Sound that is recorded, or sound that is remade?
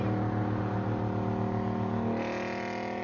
recorded